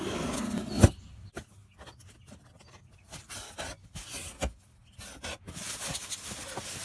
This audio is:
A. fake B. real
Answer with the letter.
B